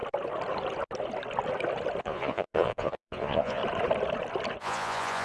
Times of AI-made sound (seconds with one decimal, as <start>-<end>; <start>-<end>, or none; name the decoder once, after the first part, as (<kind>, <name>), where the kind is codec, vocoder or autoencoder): 2.0-3.6 (vocoder, Vocos); 4.6-5.2